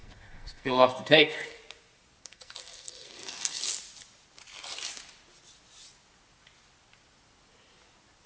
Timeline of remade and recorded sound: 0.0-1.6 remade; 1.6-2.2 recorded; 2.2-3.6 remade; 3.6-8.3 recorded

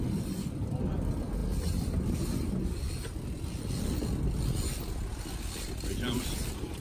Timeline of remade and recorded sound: 0.0-6.8 recorded